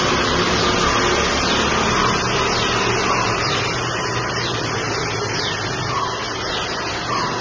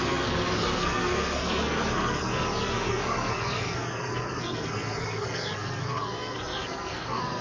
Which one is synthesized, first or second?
second